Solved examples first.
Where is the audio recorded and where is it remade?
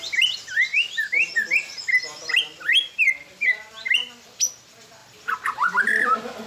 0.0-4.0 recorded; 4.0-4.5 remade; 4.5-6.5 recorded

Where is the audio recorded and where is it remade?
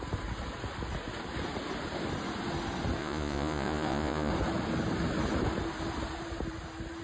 0.0-3.0 recorded; 3.0-4.3 remade; 4.3-7.0 recorded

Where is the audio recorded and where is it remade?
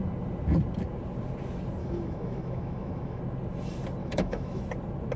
0.0-1.8 recorded; 1.8-3.2 remade; 3.2-4.0 recorded; 4.0-4.6 remade; 4.6-5.2 recorded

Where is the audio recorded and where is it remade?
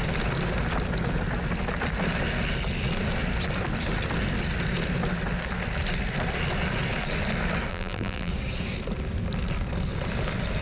0.0-7.7 recorded; 7.7-8.3 remade; 8.3-10.6 recorded